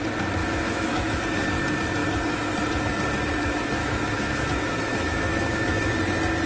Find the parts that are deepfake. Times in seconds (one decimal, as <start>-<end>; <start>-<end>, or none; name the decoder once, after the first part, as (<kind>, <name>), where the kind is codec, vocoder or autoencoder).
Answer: 0.4-1.2 (autoencoder, DAC-VAE); 3.8-5.9